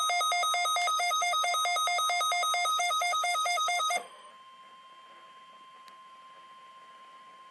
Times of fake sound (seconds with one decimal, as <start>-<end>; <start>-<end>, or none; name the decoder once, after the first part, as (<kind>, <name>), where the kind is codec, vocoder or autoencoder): 0.9-1.5 (autoencoder, DAC-VAE); 2.7-4.3